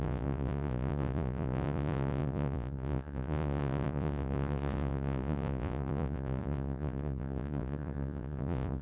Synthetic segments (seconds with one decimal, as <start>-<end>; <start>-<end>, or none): 0.0-8.8